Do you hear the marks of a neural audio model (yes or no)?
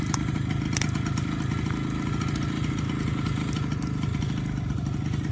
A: no